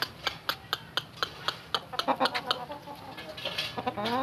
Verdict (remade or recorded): recorded